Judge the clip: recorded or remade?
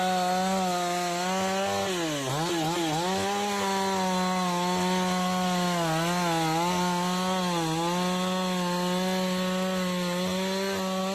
recorded